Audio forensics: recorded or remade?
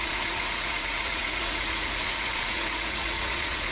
remade